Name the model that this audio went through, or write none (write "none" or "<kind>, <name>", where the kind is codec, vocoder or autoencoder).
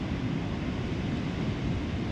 none